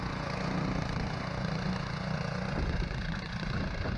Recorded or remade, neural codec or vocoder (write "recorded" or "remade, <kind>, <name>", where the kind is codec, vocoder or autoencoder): remade, vocoder, Vocos